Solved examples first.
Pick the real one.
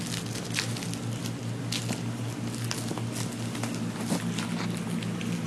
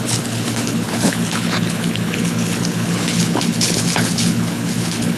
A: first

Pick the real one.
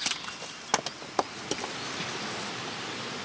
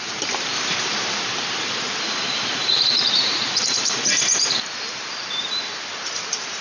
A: first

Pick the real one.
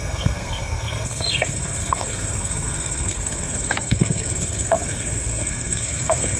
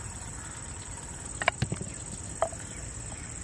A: second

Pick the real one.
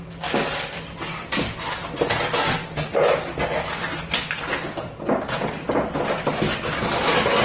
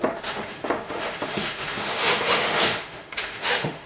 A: first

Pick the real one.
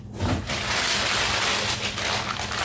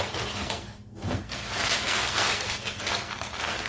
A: first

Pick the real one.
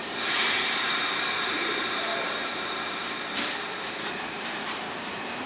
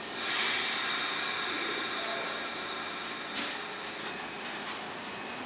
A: second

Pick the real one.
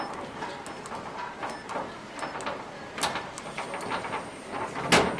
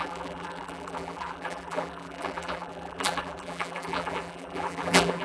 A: first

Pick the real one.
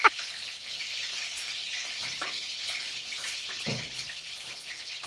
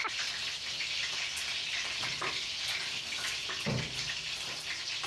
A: second